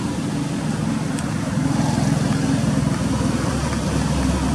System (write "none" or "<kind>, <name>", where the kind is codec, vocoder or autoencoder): none